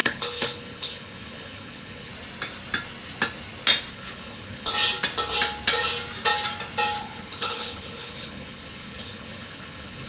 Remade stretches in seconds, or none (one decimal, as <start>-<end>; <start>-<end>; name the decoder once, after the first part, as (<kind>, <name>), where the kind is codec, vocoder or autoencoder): 0.0-2.1 (codec, HILCodec); 3.9-4.7; 7.0-10.1